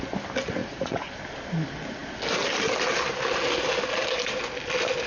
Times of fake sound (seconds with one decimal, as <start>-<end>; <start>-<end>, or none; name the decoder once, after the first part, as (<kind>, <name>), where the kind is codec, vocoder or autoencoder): 0.6-1.2 (vocoder, Vocos)